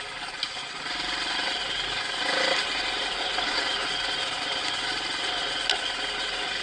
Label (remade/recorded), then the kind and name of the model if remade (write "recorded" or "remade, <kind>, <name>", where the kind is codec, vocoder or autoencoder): recorded